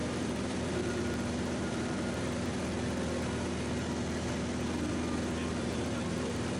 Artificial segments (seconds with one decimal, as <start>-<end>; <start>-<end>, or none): 0.0-2.5; 5.5-6.6